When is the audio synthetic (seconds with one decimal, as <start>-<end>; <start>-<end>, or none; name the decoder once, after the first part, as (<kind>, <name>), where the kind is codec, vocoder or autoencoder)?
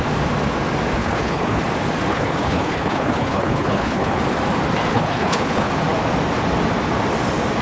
1.0-1.6 (codec, HILCodec); 2.1-4.2; 4.9-5.7